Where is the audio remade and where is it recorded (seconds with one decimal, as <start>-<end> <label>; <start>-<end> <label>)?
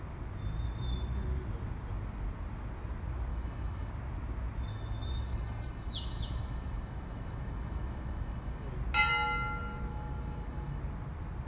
0.0-3.3 recorded; 3.3-3.9 remade; 3.9-4.7 recorded; 4.7-8.7 remade; 8.7-9.9 recorded; 9.9-10.8 remade; 10.8-11.5 recorded